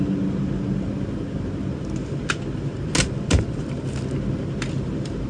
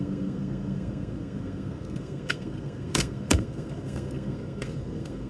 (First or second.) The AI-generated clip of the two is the second